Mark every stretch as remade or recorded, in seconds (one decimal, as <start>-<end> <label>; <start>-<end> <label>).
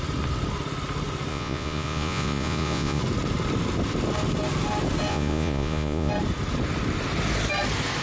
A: 0.0-1.3 recorded; 1.3-3.0 remade; 3.0-5.1 recorded; 5.1-6.1 remade; 6.1-8.0 recorded